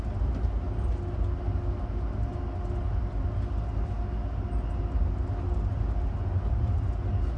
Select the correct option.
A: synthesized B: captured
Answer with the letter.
B